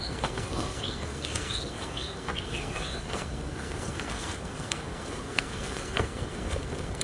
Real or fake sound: fake